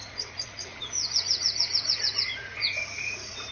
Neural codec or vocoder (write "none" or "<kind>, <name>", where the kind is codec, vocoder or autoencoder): vocoder, Vocos